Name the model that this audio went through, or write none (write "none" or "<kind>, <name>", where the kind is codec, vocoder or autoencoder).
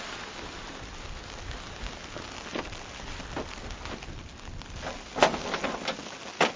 none